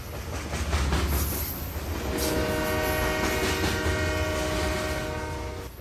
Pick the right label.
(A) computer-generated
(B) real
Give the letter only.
B